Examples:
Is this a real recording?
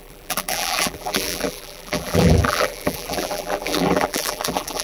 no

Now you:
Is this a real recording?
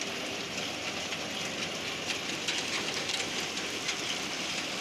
no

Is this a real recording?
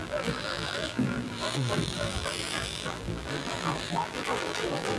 no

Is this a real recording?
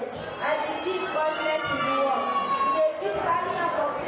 yes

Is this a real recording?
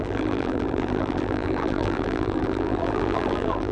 no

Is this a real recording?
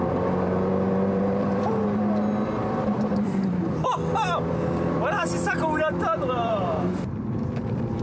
no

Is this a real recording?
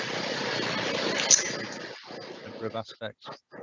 yes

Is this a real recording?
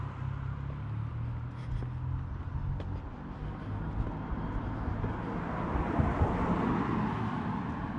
yes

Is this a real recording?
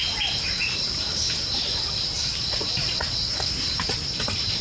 no